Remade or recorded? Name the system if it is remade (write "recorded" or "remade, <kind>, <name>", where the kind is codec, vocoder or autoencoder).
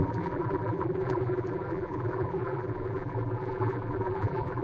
remade, vocoder, BigVGAN v2